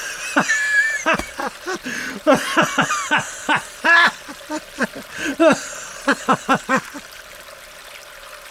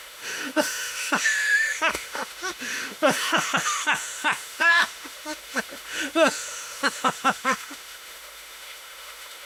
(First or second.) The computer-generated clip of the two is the second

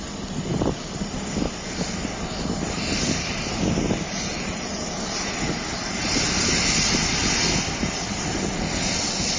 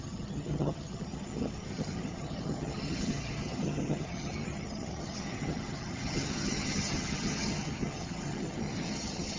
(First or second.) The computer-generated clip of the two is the second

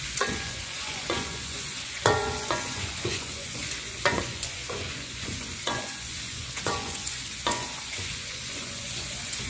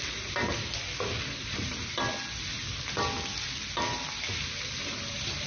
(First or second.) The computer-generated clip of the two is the first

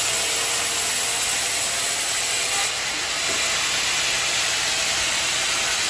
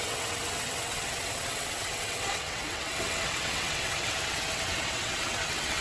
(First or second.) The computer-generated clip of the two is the second